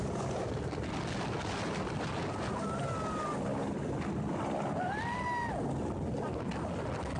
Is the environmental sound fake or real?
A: real